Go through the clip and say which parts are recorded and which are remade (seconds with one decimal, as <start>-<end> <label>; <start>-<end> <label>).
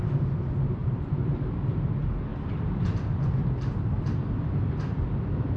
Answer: 0.0-0.8 recorded; 0.8-1.9 remade; 1.9-2.3 recorded; 2.3-5.6 remade